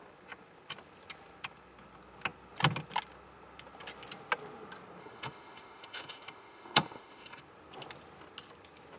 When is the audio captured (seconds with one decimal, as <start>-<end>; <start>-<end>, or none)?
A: 0.0-5.0; 7.4-9.0